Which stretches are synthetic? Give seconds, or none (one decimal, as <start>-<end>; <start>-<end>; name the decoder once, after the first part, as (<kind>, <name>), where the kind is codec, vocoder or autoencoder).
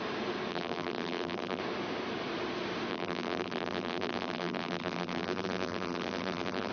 0.5-1.6 (vocoder, BigVGAN v2); 2.9-6.7